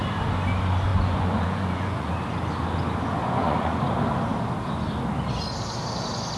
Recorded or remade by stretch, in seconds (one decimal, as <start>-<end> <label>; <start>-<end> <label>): 0.0-0.9 recorded; 0.9-2.1 remade; 2.1-3.2 recorded; 3.2-3.8 remade; 3.8-6.4 recorded